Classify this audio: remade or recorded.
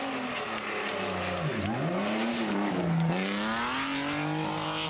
recorded